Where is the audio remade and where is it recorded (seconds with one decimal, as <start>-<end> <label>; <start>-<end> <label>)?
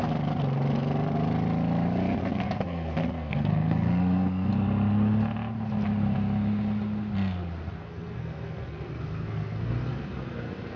0.0-2.2 recorded; 2.2-4.5 remade; 4.5-7.8 recorded; 7.8-10.8 remade